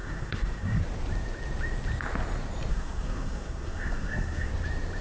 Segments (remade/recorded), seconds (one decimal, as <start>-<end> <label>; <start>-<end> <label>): 0.0-0.8 remade; 0.8-2.7 recorded; 2.7-4.5 remade; 4.5-5.0 recorded